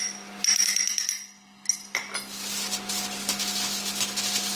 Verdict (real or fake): real